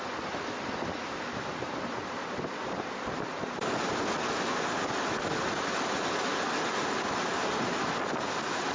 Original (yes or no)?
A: no